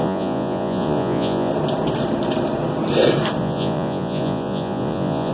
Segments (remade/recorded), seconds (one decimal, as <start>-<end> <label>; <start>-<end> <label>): 0.0-1.5 remade; 1.5-3.4 recorded; 3.4-5.3 remade